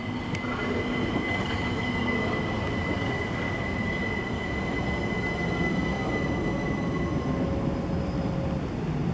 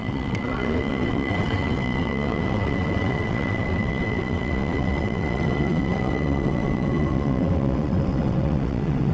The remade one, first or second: second